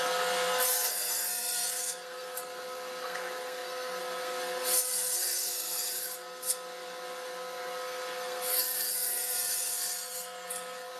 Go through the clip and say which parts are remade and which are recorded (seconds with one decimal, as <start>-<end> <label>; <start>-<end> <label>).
0.0-11.0 remade